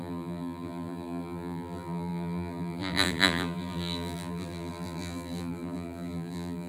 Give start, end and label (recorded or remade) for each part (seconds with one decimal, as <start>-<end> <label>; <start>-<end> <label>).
0.0-6.7 remade